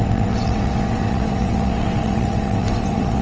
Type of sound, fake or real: fake